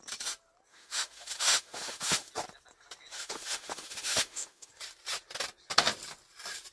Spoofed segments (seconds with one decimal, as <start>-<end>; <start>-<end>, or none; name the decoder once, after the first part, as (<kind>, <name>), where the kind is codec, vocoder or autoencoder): 0.7-2.3 (autoencoder, DAC-VAE); 3.1-4.7